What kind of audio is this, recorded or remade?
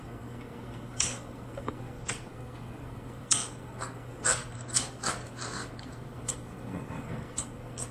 remade